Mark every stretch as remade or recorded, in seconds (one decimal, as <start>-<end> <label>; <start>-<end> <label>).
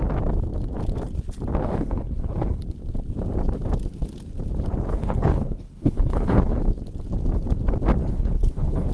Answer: 0.0-1.6 recorded; 1.6-2.6 remade; 2.6-4.9 recorded; 4.9-6.6 remade; 6.6-8.0 recorded; 8.0-8.9 remade